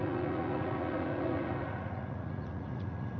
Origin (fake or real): fake